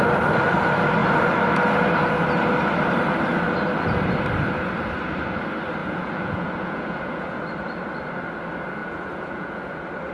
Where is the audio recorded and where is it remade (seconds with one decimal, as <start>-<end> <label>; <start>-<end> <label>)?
0.0-5.8 recorded; 5.8-7.4 remade; 7.4-8.8 recorded; 8.8-9.7 remade; 9.7-10.1 recorded